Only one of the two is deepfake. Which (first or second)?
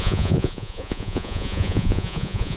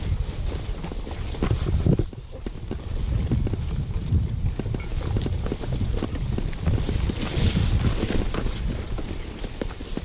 first